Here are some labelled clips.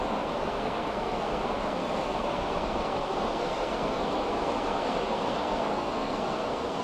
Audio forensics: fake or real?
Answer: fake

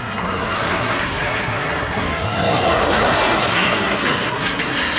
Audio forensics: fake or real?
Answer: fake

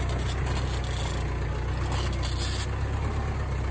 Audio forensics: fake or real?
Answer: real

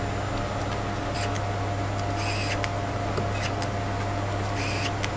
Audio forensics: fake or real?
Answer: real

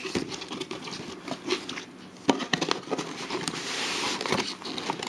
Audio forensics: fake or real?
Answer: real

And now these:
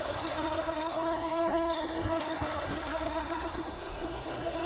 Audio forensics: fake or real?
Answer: fake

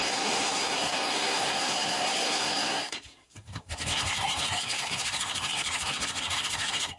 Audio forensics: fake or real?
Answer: fake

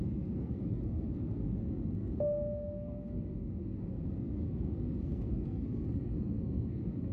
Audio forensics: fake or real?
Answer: fake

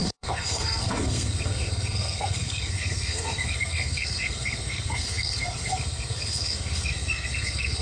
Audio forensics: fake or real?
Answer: fake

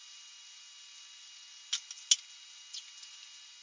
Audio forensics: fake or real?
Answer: real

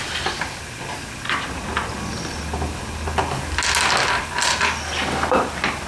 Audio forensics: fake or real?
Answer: real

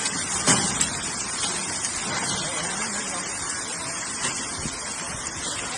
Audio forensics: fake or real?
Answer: real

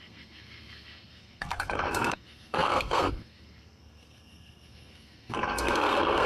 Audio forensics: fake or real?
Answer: fake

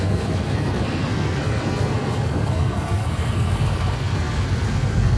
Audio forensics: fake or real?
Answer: fake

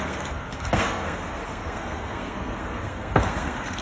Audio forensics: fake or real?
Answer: fake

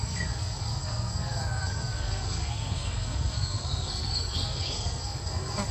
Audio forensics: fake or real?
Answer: fake